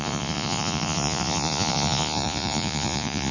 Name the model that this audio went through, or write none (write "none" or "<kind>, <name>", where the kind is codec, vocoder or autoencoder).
vocoder, Vocos